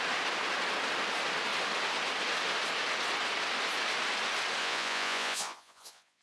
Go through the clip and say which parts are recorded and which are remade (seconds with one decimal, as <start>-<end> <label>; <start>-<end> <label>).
0.0-4.6 recorded; 4.6-6.2 remade